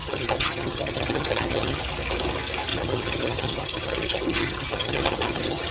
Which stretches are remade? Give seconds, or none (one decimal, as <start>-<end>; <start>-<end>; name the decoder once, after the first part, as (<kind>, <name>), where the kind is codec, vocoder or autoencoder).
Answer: 0.0-1.8 (vocoder, HiFi-GAN); 2.7-5.7